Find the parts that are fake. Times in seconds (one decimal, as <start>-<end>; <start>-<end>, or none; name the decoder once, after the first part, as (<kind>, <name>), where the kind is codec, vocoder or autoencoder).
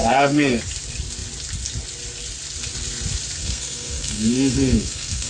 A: 0.0-0.6 (codec, SNAC); 3.4-5.3